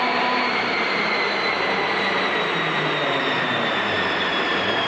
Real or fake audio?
fake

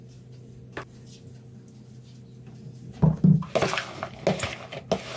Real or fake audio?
real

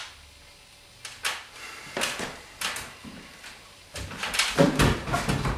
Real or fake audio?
real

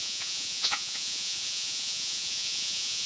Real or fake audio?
fake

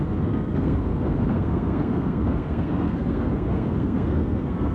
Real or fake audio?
fake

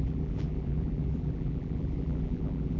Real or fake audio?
fake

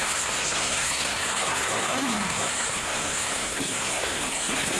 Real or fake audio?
fake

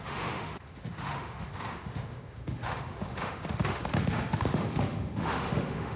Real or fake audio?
fake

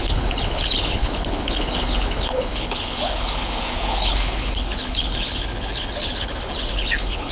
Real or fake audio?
fake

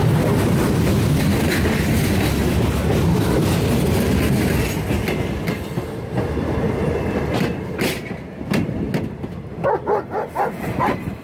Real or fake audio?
real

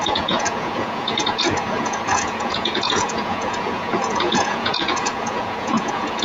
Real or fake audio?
fake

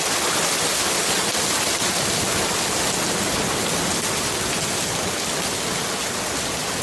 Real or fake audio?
real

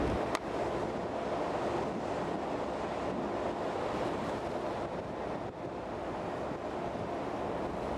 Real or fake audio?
real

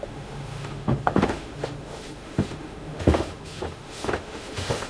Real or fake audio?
fake